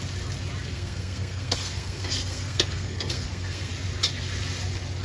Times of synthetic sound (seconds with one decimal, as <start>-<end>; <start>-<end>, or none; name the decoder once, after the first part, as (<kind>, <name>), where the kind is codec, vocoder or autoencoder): 0.7-3.7 (codec, SNAC)

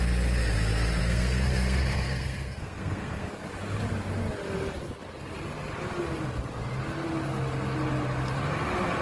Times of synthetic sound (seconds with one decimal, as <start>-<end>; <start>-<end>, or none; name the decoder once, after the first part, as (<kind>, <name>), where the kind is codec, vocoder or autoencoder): 1.0-3.3 (codec, SNAC)

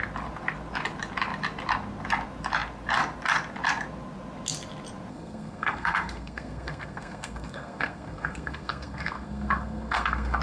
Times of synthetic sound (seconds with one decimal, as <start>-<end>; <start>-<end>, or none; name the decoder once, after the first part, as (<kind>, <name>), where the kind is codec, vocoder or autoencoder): 5.1-10.4 (codec, SNAC)

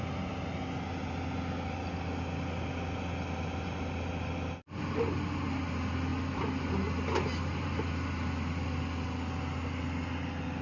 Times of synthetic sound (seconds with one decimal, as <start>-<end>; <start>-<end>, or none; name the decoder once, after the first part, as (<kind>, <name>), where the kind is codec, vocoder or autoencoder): none

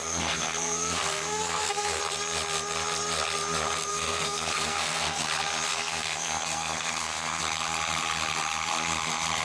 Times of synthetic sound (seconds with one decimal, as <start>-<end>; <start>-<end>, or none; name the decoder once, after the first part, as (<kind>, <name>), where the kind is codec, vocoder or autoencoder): 0.0-2.0 (codec, SNAC); 3.9-5.2; 5.7-7.4

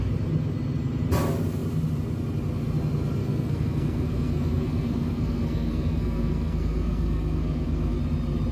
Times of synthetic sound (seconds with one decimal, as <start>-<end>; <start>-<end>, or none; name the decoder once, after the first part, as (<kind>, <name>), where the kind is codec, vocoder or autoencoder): 3.2-8.0 (codec, SNAC)

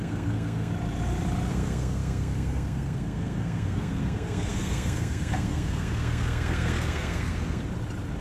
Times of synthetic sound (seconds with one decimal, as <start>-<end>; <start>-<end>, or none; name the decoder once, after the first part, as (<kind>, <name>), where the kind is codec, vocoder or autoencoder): 0.0-0.7 (codec, SNAC); 1.5-7.6

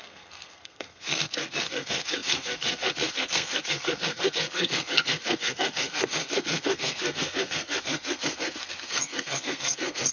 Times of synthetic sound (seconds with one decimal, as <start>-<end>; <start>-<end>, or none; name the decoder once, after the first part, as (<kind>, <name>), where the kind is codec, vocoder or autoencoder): 0.0-10.1 (codec, SNAC)